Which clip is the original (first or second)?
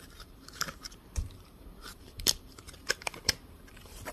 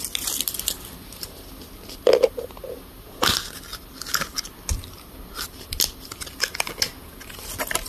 second